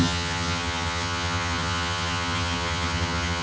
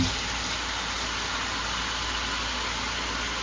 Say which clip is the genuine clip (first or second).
second